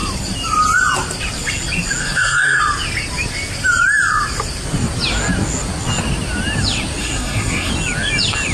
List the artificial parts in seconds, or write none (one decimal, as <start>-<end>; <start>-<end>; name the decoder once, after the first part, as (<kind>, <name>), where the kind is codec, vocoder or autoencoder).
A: 2.0-2.6 (codec, SNAC); 7.0-7.7